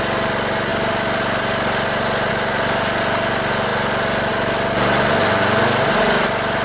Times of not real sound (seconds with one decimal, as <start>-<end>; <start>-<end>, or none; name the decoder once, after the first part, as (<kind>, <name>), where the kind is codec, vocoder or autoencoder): none